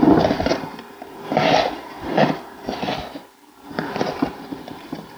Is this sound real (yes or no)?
no